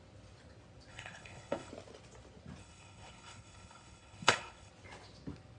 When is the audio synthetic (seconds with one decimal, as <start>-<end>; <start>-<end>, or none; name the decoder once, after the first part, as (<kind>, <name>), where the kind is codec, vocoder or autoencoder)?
0.9-1.7 (codec, HILCodec); 2.6-4.7

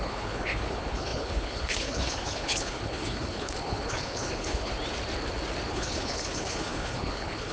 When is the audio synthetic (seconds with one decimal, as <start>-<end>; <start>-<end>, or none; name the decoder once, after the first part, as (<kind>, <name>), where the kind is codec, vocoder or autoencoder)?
0.0-4.7 (codec, HILCodec); 5.7-7.5

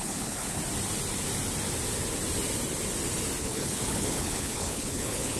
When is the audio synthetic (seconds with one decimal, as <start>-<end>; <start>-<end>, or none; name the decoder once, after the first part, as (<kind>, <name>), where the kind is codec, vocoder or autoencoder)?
0.0-0.6 (codec, HILCodec); 3.4-5.4

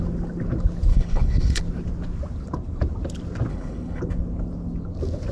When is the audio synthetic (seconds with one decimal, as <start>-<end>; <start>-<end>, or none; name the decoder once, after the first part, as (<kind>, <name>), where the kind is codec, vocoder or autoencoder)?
0.9-1.6 (codec, HILCodec); 3.5-4.0